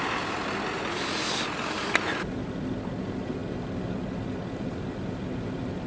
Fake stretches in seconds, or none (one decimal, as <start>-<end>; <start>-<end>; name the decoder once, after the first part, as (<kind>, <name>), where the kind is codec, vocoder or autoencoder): none

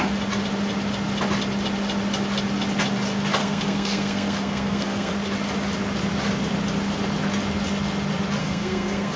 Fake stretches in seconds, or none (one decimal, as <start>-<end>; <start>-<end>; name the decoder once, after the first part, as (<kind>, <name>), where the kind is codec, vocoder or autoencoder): 3.4-5.1 (codec, SNAC); 8.4-9.2